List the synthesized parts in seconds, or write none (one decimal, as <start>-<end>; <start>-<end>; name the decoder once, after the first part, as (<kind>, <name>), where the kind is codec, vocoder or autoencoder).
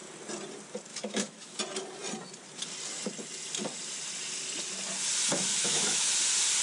0.9-1.6 (autoencoder, DAC-VAE); 5.5-6.1